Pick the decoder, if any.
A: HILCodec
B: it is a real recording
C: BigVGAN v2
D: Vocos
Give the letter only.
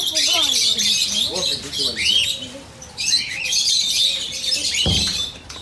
B